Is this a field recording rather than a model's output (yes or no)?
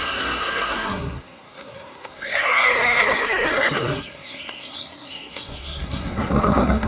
no